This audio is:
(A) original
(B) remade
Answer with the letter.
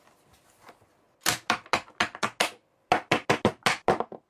A